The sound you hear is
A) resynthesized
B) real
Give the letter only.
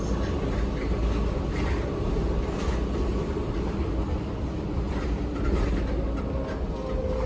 B